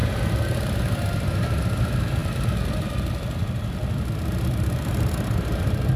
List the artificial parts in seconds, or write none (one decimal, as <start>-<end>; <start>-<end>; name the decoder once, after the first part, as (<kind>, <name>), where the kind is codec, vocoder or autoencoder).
none